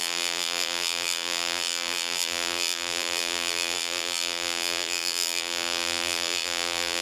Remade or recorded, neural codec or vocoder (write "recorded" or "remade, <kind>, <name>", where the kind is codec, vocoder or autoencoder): remade, vocoder, BigVGAN v2